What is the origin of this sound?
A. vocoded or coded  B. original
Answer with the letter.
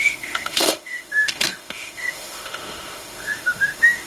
A